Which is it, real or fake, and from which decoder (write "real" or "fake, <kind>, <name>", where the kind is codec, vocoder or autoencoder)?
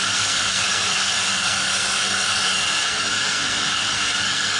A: fake, codec, SNAC